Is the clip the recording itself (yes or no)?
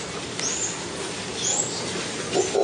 yes